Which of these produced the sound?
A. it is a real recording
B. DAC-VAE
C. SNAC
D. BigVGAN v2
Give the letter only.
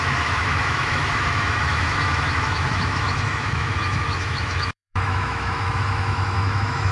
B